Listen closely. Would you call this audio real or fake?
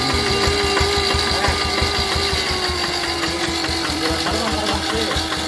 real